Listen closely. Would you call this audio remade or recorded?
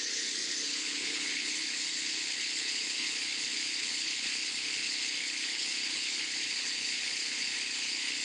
remade